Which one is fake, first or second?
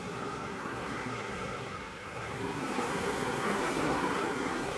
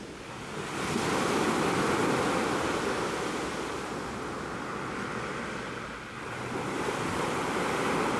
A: first